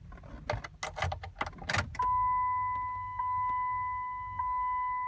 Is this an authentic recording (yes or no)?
yes